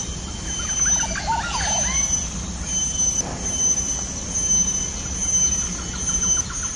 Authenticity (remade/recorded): recorded